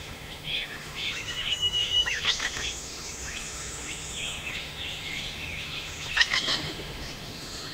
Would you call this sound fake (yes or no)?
yes